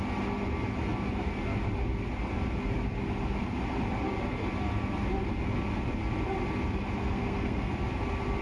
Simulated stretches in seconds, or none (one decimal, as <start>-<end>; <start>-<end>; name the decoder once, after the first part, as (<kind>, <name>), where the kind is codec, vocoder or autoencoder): 7.0-7.7 (codec, SNAC)